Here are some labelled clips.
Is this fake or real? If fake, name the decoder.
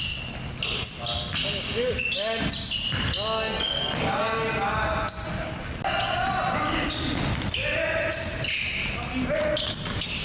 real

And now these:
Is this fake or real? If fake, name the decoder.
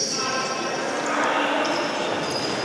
real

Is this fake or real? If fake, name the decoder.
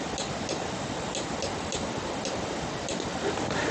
real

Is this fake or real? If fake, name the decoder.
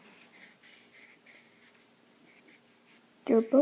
fake, vocoder, BigVGAN v2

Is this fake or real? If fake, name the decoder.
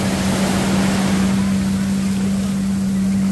real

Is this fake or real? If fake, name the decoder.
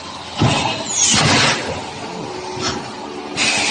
real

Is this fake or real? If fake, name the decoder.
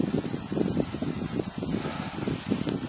fake, vocoder, BigVGAN v2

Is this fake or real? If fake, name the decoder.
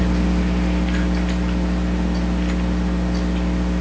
real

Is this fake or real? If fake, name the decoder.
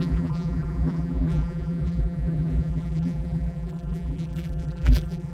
fake, vocoder, BigVGAN v2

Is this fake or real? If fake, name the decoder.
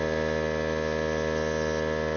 real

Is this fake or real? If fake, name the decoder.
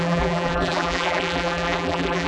fake, vocoder, BigVGAN v2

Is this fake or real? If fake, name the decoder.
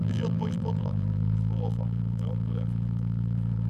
fake, vocoder, BigVGAN v2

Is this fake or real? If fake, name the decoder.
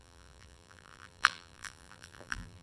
fake, vocoder, BigVGAN v2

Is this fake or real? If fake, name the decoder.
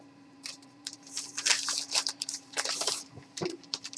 fake, vocoder, BigVGAN v2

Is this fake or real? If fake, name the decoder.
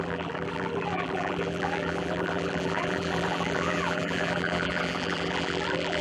fake, vocoder, BigVGAN v2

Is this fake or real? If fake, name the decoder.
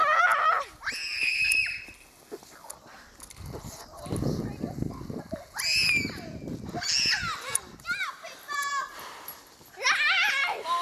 real